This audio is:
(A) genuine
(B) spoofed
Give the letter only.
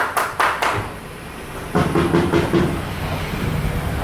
A